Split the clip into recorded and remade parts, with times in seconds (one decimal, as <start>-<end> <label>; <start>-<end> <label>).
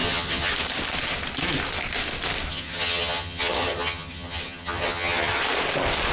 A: 0.0-0.5 remade; 0.5-2.5 recorded; 2.5-5.4 remade; 5.4-6.1 recorded